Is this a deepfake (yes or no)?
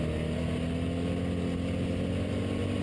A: no